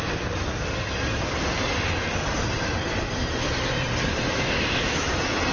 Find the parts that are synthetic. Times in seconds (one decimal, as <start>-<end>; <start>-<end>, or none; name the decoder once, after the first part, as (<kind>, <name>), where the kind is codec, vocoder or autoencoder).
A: 4.1-5.1 (autoencoder, DAC-VAE)